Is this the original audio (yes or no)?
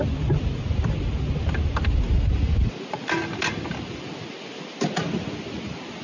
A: yes